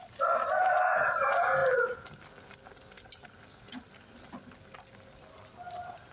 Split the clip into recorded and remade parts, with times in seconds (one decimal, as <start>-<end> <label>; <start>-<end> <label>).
0.0-6.1 recorded